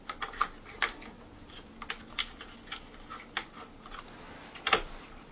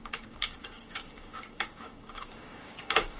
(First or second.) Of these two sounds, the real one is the first